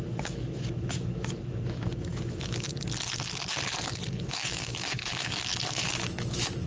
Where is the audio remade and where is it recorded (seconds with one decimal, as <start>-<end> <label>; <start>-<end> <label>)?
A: 0.0-2.7 remade; 2.7-4.1 recorded; 4.1-6.7 remade